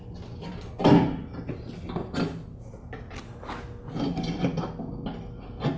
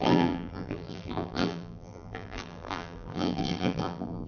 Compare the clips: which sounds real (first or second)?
first